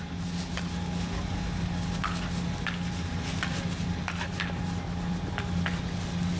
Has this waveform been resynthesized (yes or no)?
no